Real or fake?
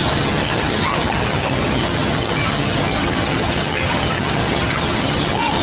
fake